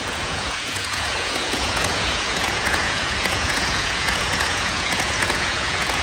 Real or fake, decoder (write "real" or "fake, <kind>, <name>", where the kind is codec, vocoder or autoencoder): fake, vocoder, Vocos